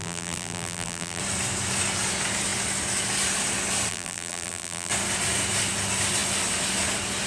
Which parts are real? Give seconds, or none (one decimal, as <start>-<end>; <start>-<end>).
1.2-3.9; 4.9-7.3